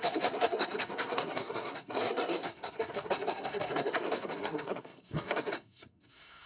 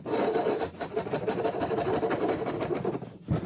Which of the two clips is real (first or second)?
second